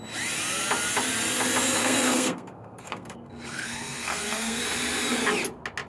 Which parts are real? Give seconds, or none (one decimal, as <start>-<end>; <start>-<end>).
0.0-1.8; 4.6-5.9